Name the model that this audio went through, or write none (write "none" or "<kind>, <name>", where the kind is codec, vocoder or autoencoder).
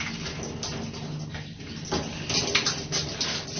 none